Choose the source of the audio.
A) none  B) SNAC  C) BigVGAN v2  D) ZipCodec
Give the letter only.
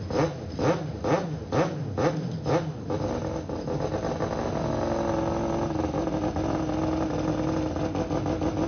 A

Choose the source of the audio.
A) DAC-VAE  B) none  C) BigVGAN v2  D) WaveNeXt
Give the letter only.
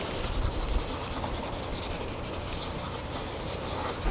B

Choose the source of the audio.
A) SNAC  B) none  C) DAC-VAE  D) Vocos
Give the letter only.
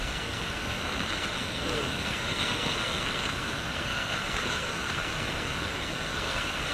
A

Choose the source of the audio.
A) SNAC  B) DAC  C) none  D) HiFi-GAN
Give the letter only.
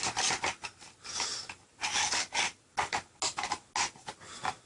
C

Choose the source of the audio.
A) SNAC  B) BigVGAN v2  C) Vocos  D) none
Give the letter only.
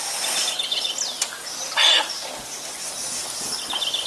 D